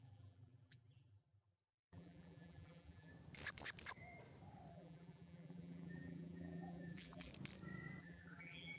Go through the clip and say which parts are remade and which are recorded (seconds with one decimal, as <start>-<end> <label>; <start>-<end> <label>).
0.0-3.1 remade; 3.1-4.7 recorded; 4.7-7.3 remade; 7.3-8.0 recorded; 8.0-8.8 remade

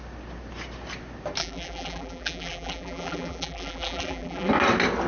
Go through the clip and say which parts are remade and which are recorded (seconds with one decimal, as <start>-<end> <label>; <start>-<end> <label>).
0.0-1.4 recorded; 1.4-4.5 remade; 4.5-5.1 recorded

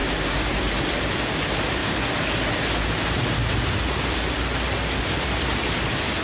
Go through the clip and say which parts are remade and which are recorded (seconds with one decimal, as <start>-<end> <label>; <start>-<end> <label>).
0.0-0.8 recorded; 0.8-1.8 remade; 1.8-2.8 recorded; 2.8-3.4 remade; 3.4-5.0 recorded; 5.0-6.2 remade

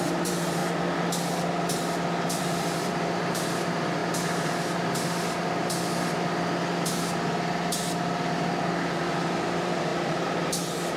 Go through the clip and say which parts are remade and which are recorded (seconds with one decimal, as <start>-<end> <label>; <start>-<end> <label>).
0.0-0.6 remade; 0.6-2.4 recorded; 2.4-4.0 remade; 4.0-9.2 recorded; 9.2-9.9 remade; 9.9-11.0 recorded

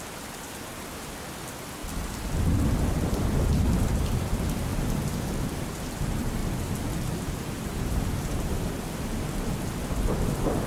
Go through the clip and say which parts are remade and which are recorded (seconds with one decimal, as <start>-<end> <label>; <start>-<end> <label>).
0.0-1.8 remade; 1.8-2.9 recorded; 2.9-4.7 remade; 4.7-5.4 recorded; 5.4-6.4 remade; 6.4-8.0 recorded; 8.0-10.7 remade